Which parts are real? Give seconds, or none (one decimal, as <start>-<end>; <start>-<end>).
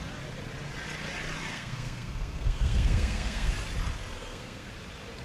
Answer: 0.0-1.5; 3.5-4.2; 4.7-5.2